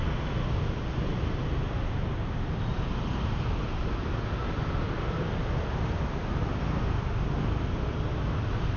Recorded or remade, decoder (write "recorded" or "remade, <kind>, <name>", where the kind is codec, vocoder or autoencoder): recorded